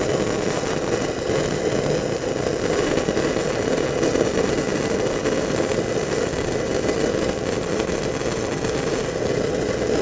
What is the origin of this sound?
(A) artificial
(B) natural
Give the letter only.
B